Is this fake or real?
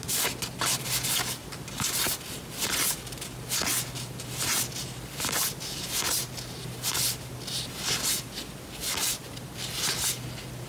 real